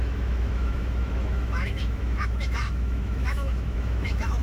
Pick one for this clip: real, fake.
fake